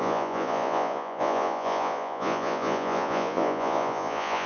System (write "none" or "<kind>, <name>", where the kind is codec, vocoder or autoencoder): vocoder, Vocos